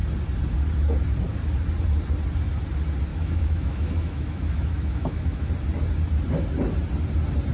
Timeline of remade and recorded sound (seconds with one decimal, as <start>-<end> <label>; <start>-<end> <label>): 0.0-3.1 recorded; 3.1-5.5 remade; 5.5-7.5 recorded